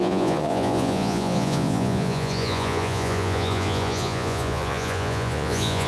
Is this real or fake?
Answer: fake